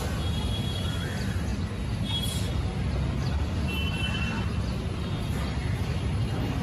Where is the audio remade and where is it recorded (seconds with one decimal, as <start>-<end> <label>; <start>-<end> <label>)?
0.0-6.6 recorded